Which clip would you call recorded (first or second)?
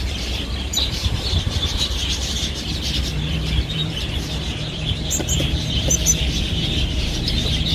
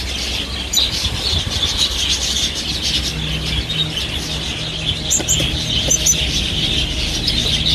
second